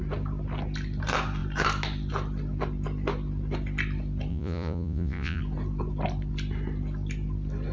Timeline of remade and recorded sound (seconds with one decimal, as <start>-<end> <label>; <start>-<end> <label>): 0.0-4.3 recorded; 4.3-5.4 remade; 5.4-7.7 recorded